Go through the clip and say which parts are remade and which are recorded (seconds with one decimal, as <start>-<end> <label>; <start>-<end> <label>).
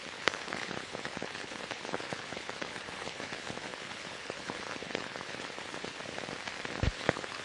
0.0-6.0 remade; 6.0-6.9 recorded; 6.9-7.4 remade